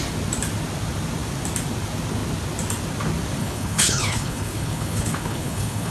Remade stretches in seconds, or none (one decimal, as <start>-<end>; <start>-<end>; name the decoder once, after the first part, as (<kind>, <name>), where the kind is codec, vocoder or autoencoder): 3.4-5.9 (codec, HILCodec)